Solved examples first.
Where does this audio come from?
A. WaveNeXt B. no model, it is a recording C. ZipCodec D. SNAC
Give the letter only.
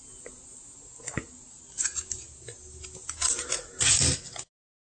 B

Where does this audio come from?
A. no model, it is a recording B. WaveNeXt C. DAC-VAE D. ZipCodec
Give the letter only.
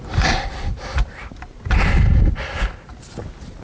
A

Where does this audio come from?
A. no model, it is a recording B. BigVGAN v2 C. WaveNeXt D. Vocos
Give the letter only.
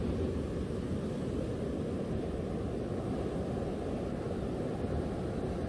A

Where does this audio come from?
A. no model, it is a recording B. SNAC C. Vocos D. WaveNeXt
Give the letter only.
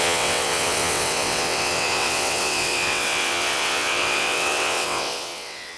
D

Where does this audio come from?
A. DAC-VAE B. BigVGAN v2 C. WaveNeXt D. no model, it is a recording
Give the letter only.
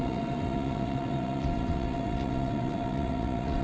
C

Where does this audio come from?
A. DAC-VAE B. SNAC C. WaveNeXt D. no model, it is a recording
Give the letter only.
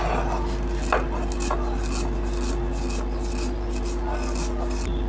D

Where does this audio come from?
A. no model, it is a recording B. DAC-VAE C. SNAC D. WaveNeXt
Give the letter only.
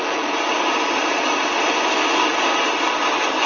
A